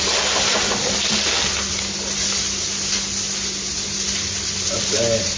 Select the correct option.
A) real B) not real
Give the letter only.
A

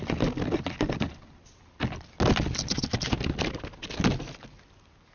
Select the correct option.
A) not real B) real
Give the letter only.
B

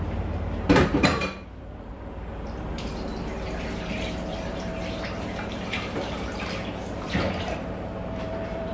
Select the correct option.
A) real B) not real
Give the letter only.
B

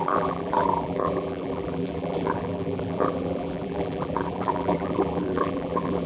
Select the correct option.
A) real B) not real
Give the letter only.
B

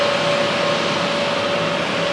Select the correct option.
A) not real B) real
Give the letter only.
B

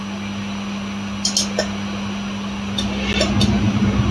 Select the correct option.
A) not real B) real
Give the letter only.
B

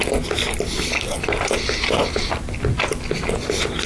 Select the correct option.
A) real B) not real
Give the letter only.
A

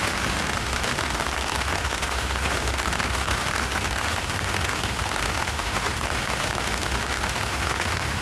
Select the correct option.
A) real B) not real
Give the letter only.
B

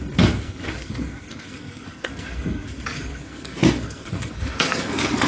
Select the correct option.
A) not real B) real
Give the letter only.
A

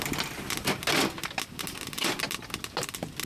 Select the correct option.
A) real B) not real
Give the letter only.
A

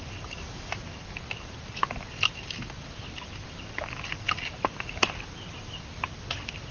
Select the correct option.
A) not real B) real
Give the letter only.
B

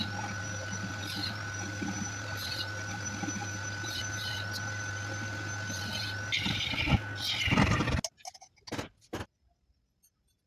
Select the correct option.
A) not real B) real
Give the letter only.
B